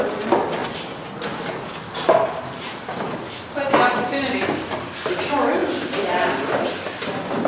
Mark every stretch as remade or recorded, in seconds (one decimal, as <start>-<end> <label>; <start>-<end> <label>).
0.0-7.5 recorded